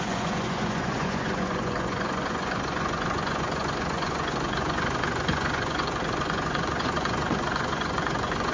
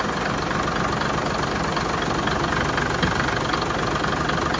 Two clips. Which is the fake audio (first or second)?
first